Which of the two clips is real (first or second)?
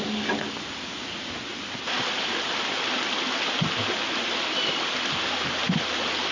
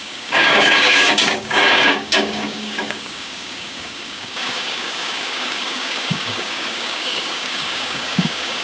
first